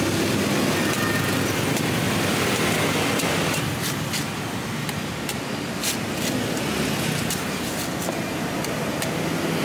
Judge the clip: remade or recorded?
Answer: recorded